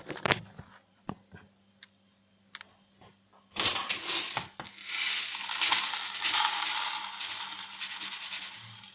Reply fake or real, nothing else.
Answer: real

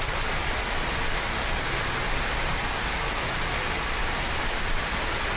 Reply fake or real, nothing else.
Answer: real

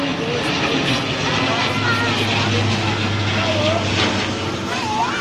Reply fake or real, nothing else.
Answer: real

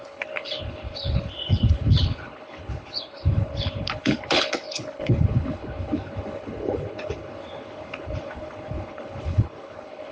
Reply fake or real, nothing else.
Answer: fake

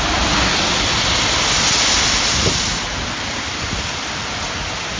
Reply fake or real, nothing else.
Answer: real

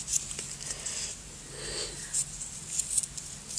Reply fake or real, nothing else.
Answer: real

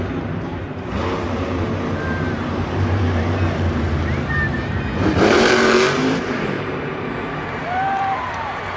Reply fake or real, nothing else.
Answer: fake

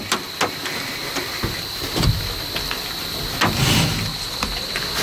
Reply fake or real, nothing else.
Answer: real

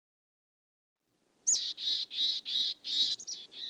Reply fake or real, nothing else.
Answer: real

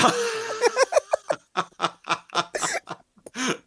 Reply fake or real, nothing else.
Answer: real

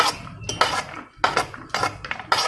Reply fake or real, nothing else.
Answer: real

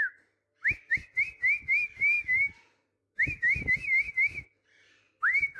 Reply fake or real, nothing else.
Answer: real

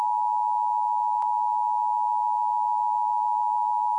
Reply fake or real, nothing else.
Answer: real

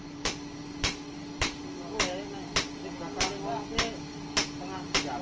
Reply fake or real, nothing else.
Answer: real